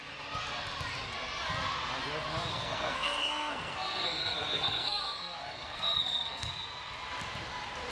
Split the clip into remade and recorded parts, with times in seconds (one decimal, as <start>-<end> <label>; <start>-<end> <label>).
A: 0.0-2.5 recorded; 2.5-6.5 remade; 6.5-7.9 recorded